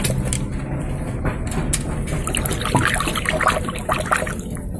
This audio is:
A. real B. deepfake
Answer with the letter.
A